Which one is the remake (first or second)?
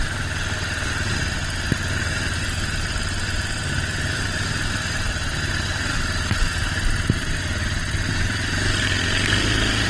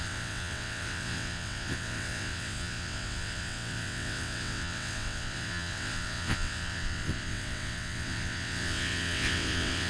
second